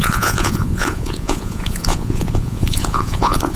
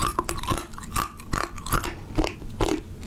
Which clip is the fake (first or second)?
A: first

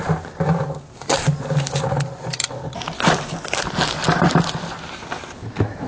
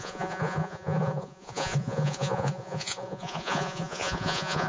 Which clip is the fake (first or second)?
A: second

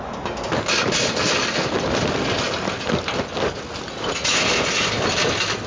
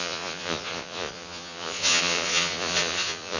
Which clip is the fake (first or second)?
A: second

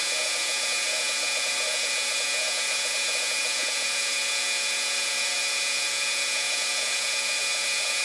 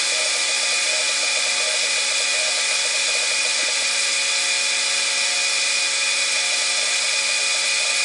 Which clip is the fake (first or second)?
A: first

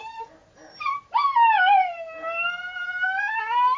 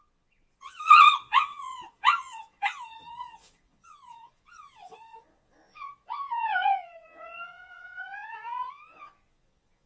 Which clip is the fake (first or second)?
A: second